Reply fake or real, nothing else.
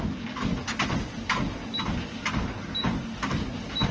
real